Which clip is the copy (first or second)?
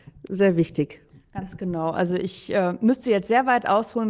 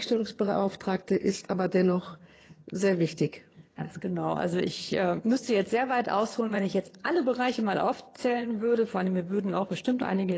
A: second